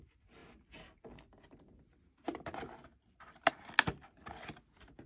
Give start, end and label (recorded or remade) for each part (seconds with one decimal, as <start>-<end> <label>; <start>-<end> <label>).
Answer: 0.0-5.1 recorded